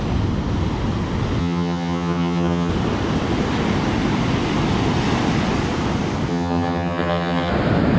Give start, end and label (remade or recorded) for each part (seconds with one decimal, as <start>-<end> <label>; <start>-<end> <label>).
0.0-1.4 recorded; 1.4-2.7 remade; 2.7-6.3 recorded; 6.3-7.5 remade; 7.5-8.0 recorded